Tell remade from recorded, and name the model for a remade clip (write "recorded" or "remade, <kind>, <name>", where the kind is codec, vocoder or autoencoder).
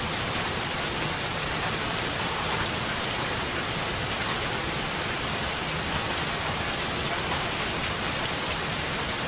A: recorded